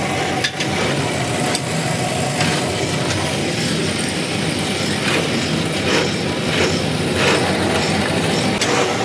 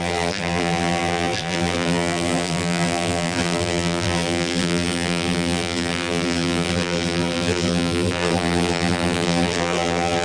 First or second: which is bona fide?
first